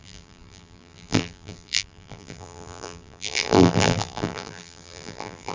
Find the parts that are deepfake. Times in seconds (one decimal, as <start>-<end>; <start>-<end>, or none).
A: 0.0-5.5